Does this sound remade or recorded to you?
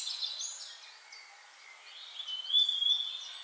recorded